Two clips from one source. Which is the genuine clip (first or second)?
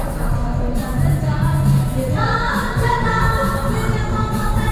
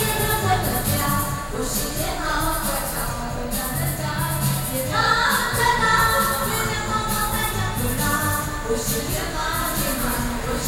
second